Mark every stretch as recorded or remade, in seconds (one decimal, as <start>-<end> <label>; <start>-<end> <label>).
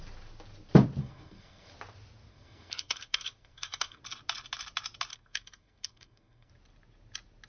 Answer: 0.0-1.0 recorded; 1.0-1.7 remade; 1.7-2.3 recorded; 2.3-4.0 remade; 4.0-5.1 recorded; 5.1-6.5 remade; 6.5-7.5 recorded